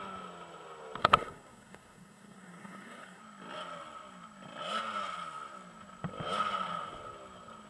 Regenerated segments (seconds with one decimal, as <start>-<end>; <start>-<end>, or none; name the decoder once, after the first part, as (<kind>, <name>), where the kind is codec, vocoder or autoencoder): 1.0-3.2 (codec, SNAC)